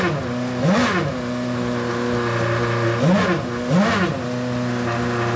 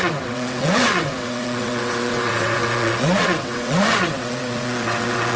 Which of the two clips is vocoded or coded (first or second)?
second